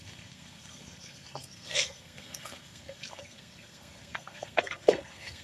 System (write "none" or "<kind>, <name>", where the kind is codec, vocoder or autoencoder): codec, SNAC